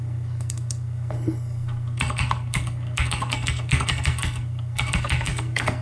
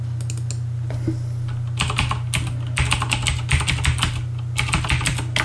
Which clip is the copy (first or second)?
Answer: first